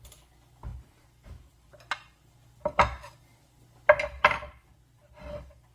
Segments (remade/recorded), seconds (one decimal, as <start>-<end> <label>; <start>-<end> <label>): 0.0-0.7 recorded; 0.7-1.7 remade; 1.7-5.7 recorded